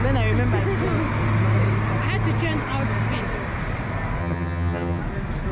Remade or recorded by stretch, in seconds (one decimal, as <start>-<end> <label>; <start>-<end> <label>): 0.0-4.2 recorded; 4.2-5.0 remade; 5.0-5.5 recorded